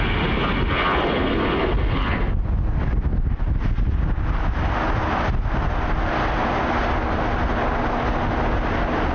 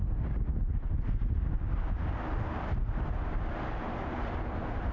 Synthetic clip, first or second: second